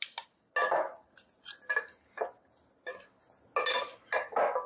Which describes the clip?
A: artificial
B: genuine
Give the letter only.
B